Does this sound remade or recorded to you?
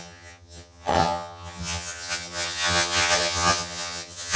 remade